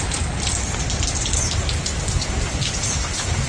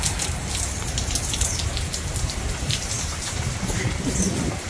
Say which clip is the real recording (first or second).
first